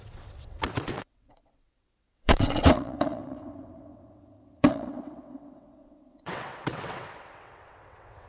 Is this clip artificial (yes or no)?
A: yes